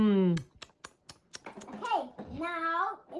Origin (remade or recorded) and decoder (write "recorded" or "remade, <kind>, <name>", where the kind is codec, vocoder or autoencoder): recorded